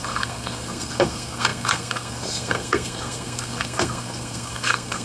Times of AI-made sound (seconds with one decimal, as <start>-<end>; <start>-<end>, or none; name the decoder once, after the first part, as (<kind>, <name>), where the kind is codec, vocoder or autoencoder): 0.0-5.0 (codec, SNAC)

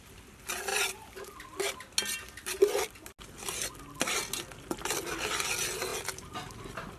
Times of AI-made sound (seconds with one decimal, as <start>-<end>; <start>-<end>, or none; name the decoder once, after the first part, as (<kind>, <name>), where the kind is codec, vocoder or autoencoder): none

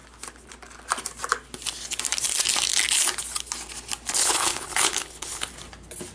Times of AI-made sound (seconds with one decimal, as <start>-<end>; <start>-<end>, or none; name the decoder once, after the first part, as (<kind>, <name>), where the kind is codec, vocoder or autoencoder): 4.2-5.5 (codec, HILCodec)

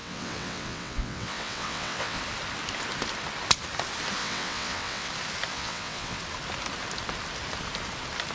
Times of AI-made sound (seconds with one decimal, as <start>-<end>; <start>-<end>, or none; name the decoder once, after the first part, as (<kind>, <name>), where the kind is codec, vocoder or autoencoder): 0.0-2.2 (vocoder, WaveNeXt); 4.2-5.1; 5.5-6.2